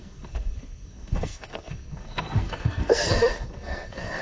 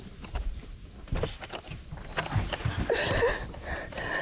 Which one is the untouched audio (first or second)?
second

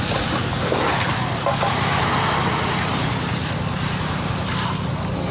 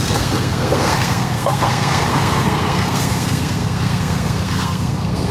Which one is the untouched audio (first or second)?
first